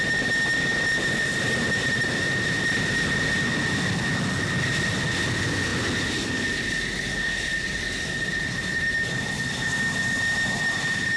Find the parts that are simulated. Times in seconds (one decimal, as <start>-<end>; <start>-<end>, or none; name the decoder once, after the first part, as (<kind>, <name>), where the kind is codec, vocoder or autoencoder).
none